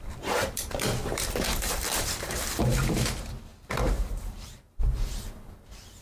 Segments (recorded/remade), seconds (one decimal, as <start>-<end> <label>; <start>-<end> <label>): 0.0-6.0 remade